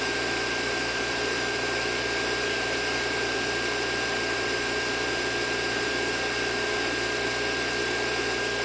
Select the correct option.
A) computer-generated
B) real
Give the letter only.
A